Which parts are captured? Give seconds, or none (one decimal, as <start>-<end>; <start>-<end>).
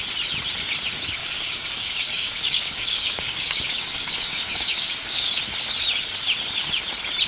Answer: 0.0-1.2; 5.4-7.3